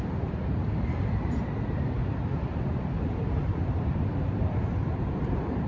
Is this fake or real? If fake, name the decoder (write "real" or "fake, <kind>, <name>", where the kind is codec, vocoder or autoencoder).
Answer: fake, vocoder, BigVGAN v2